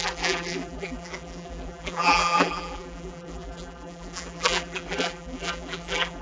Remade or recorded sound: remade